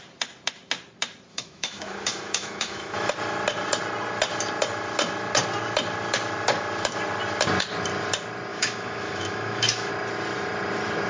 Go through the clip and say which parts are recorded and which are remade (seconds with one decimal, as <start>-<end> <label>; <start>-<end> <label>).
0.0-1.3 recorded; 1.3-3.1 remade; 3.1-8.5 recorded; 8.5-9.9 remade; 9.9-11.1 recorded